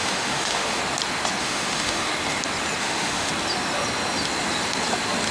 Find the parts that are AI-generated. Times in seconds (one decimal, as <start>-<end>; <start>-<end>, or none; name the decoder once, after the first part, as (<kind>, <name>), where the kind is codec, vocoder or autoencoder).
0.0-0.8 (autoencoder, DAC-VAE); 1.4-2.1; 2.8-3.3